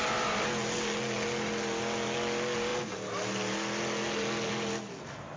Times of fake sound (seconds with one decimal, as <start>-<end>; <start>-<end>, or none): none